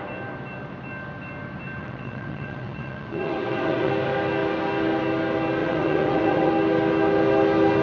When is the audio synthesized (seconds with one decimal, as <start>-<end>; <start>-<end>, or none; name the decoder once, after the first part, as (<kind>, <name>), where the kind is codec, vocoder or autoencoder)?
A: 1.8-3.9 (vocoder, WaveNeXt); 5.6-6.5